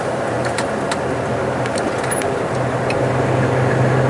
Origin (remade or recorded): recorded